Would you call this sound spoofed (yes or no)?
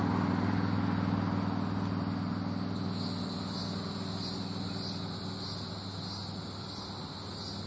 no